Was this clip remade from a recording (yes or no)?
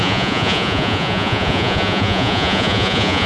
yes